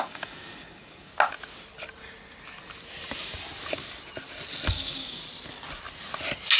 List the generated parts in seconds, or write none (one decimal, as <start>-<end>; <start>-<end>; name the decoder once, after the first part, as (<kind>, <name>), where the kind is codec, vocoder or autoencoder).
0.0-1.1 (codec, DAC); 4.7-5.2